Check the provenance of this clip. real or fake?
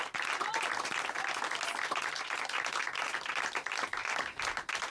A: real